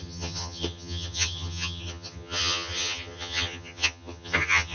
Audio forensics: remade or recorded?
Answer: remade